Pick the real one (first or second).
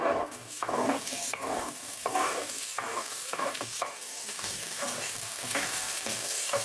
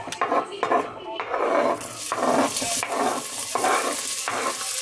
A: second